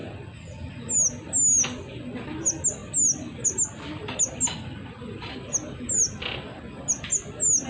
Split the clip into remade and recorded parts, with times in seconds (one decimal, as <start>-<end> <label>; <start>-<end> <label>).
0.0-7.7 recorded